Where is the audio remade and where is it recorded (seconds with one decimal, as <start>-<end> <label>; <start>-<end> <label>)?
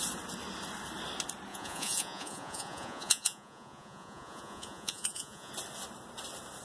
0.0-1.5 recorded; 1.5-5.5 remade; 5.5-6.6 recorded